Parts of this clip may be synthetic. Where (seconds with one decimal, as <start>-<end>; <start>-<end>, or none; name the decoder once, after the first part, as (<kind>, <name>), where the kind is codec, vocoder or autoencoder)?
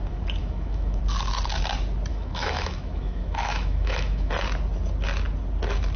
0.4-1.0 (autoencoder, DAC-VAE); 2.1-4.3